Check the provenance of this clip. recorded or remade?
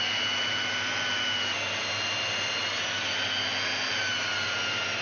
recorded